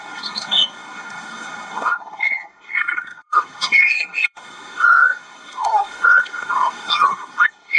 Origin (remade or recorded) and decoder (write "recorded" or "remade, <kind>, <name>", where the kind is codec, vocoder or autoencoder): remade, codec, SNAC